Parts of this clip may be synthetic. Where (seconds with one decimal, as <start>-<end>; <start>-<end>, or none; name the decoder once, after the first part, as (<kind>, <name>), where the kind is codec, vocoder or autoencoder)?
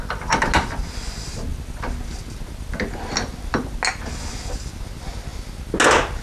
none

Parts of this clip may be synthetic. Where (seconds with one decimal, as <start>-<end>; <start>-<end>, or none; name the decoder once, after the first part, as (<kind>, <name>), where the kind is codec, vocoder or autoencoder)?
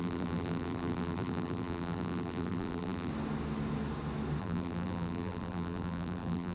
0.0-3.1 (vocoder, BigVGAN v2); 4.4-6.5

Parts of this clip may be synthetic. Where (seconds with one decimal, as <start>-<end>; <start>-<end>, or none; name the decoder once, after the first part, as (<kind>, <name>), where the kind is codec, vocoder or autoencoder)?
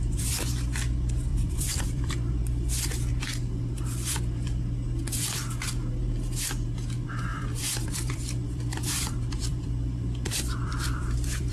1.3-2.3 (vocoder, BigVGAN v2); 7.3-11.5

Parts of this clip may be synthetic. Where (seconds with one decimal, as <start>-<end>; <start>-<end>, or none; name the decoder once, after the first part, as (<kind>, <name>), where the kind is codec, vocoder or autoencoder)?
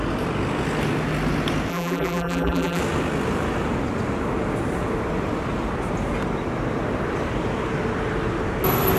1.7-2.8 (vocoder, BigVGAN v2)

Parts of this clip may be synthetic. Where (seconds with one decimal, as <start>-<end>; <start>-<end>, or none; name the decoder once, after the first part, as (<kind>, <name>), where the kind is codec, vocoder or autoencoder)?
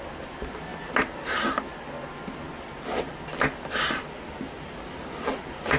none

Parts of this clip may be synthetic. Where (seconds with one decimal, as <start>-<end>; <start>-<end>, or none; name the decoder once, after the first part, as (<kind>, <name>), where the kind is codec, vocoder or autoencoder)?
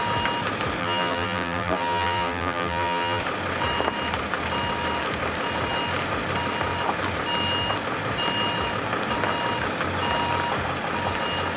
0.8-3.2 (vocoder, BigVGAN v2)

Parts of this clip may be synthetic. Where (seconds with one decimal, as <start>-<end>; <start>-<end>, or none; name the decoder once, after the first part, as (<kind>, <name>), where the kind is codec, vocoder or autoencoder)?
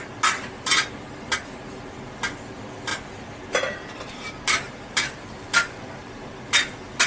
2.9-5.9 (vocoder, BigVGAN v2)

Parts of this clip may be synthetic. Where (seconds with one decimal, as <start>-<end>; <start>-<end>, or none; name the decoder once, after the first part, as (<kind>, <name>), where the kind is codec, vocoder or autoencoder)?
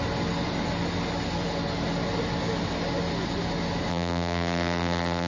3.9-5.3 (vocoder, BigVGAN v2)